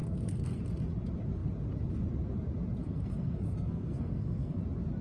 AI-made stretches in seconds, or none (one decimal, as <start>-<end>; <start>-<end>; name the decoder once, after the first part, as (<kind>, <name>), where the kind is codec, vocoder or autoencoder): 0.0-0.6 (codec, SNAC); 2.8-4.6